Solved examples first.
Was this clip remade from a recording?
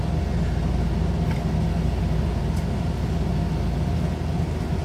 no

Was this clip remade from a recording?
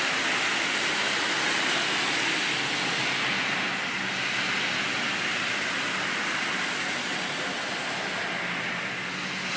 no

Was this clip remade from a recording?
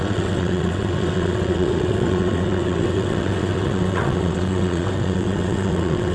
yes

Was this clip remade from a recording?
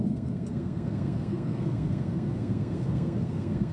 yes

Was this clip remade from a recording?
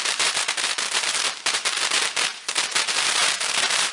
yes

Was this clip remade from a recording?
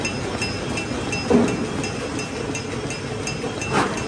no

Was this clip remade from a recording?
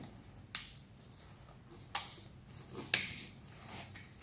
no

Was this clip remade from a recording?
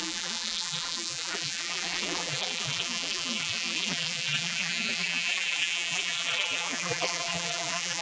yes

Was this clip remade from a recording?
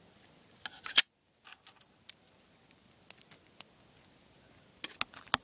no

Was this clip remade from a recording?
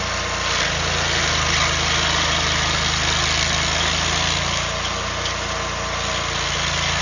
no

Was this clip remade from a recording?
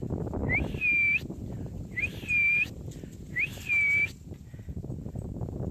no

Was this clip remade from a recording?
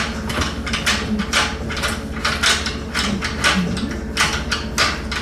no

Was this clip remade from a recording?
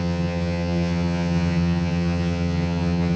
yes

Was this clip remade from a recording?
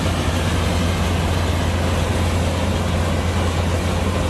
no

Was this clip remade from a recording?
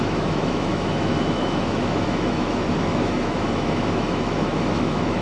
yes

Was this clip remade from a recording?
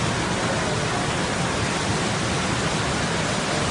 no